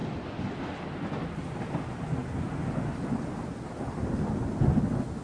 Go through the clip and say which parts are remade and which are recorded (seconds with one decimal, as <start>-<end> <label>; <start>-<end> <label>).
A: 0.0-5.2 recorded